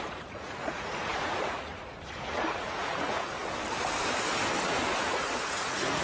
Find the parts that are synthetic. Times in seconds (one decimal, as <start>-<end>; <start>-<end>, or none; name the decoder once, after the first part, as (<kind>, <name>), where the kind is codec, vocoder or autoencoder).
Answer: 0.0-3.4 (vocoder, Vocos); 5.0-6.0

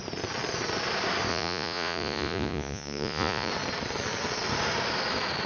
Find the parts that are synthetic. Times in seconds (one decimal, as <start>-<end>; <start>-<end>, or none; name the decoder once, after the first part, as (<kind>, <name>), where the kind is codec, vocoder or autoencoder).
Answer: 1.3-3.5 (vocoder, Vocos)

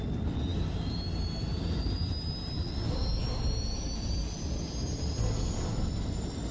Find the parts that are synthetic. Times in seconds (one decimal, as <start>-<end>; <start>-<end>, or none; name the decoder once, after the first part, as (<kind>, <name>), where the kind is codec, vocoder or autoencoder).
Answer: none

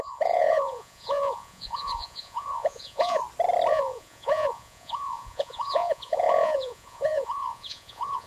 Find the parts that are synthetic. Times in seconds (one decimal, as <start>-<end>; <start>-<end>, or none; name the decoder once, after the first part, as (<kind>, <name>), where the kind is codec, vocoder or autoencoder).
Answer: 0.0-3.2 (vocoder, Vocos); 3.7-8.3

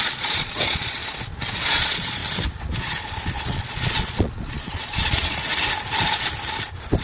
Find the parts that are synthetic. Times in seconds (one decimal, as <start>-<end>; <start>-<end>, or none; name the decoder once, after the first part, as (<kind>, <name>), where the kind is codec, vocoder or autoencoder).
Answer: 0.0-1.0 (vocoder, Vocos); 1.6-2.2; 2.8-5.5